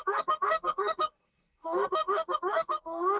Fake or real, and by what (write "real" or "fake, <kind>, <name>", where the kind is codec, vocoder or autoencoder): fake, codec, SNAC